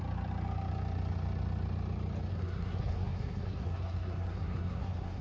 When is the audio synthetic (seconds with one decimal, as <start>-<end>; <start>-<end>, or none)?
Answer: 2.3-5.2